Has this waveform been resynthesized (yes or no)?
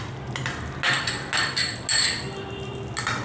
no